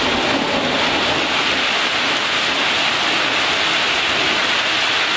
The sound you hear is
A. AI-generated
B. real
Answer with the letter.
B